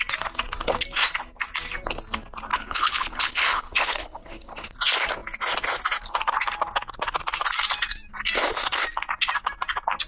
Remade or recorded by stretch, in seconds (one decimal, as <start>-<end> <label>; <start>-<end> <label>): 0.0-2.5 recorded; 2.5-4.5 remade; 4.5-10.1 recorded